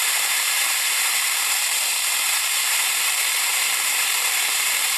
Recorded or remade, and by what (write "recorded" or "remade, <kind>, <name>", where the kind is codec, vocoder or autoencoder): remade, vocoder, BigVGAN v2